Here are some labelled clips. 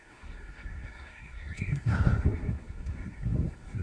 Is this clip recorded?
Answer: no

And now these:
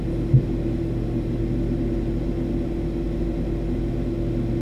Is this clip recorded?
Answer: yes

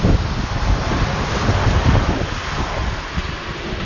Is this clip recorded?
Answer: yes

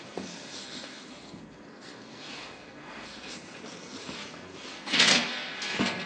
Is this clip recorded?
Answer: no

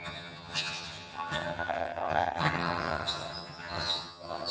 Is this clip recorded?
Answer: no